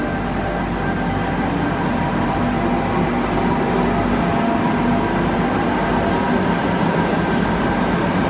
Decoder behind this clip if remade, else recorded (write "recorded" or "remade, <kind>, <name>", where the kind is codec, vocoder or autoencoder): recorded